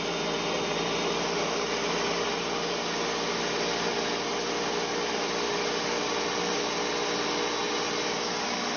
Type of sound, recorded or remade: recorded